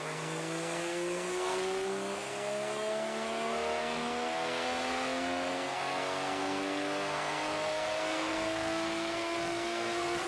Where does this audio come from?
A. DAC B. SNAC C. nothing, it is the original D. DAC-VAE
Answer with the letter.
B